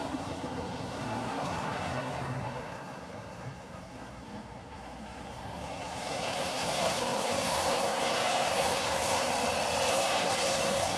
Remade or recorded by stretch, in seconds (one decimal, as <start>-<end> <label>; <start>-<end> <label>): 0.0-9.3 remade; 9.3-9.9 recorded; 9.9-11.0 remade